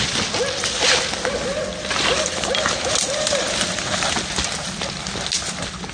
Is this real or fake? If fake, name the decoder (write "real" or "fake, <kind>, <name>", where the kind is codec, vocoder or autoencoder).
real